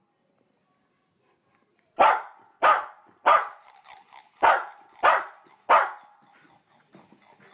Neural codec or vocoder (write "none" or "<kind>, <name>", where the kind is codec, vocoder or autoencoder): none